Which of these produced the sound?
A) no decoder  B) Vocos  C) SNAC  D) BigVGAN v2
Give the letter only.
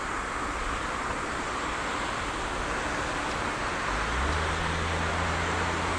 A